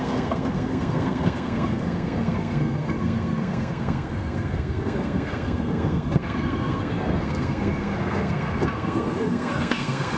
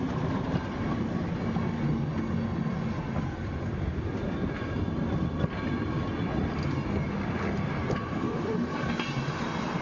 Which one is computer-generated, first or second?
first